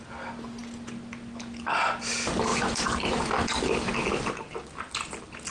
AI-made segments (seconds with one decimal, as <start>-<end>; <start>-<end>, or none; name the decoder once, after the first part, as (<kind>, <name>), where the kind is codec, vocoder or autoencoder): none